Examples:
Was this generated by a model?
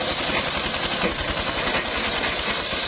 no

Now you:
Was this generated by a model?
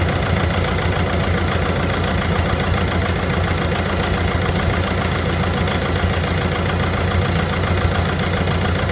no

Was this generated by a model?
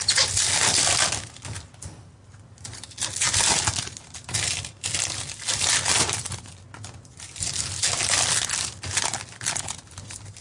no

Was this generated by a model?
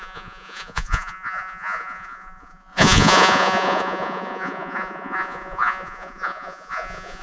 yes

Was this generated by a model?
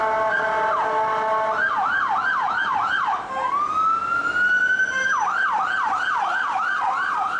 no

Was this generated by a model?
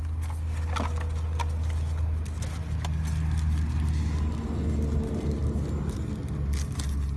no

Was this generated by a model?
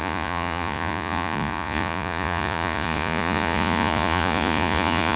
yes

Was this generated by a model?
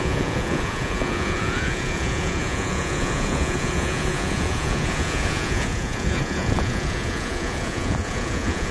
yes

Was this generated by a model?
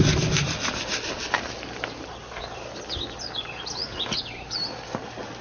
no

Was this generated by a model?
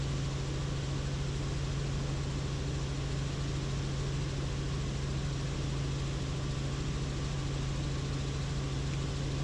no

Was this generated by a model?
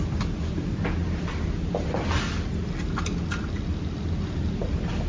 no